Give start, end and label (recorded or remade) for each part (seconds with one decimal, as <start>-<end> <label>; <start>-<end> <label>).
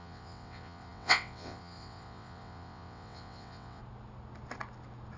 0.0-3.8 remade; 3.8-5.2 recorded